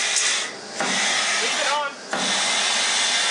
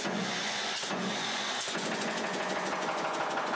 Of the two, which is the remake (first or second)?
second